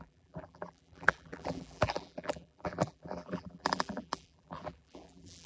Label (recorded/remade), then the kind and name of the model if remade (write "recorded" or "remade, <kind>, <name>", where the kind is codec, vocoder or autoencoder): remade, vocoder, BigVGAN v2